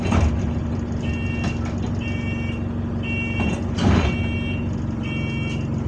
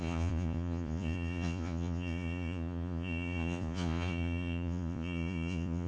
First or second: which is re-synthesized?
second